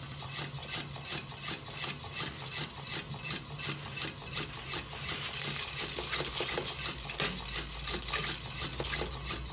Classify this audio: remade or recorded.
recorded